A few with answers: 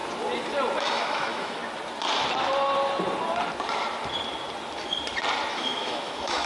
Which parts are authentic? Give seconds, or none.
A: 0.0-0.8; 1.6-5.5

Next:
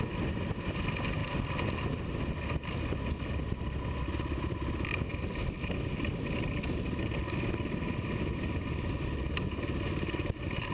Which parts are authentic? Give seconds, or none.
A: 0.0-10.7

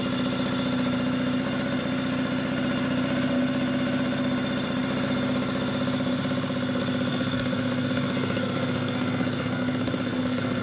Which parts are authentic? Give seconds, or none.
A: 0.0-7.1

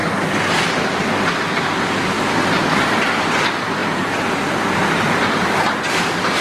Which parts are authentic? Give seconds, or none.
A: 0.0-2.4

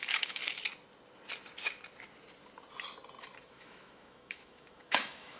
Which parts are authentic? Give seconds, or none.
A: 0.4-3.4

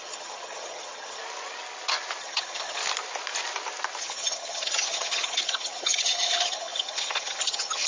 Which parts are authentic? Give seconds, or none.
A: 1.2-2.2; 2.8-4.0

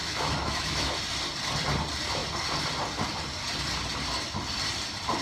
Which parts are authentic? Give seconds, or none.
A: 0.9-5.2